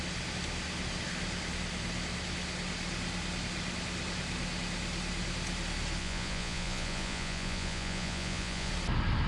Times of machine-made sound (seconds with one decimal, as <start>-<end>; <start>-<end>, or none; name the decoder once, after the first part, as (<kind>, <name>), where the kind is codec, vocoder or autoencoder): 6.0-8.7 (vocoder, Vocos)